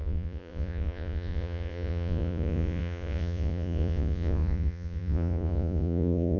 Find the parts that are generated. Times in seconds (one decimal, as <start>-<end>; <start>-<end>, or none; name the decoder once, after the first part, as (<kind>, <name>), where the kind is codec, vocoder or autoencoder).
0.0-6.4 (vocoder, Vocos)